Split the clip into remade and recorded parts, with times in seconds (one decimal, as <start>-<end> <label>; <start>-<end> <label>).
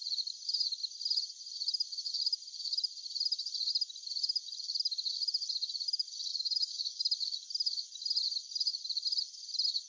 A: 0.0-6.3 recorded; 6.3-7.0 remade; 7.0-9.9 recorded